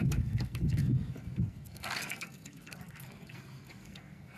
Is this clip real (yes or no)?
no